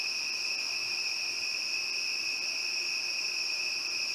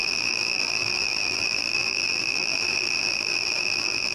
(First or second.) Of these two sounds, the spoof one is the second